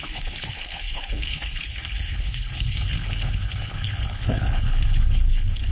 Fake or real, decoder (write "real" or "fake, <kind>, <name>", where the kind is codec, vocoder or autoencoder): fake, codec, HILCodec